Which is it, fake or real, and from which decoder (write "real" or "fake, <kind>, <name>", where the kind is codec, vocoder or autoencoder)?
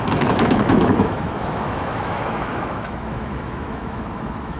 fake, autoencoder, DAC-VAE